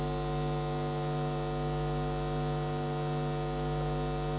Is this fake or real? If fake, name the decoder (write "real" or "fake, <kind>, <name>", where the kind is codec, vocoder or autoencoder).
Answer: real